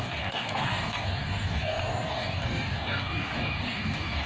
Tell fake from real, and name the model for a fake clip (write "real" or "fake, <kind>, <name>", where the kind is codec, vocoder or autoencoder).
fake, codec, DAC